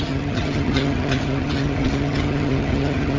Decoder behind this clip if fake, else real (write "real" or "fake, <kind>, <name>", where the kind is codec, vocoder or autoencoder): fake, vocoder, HiFi-GAN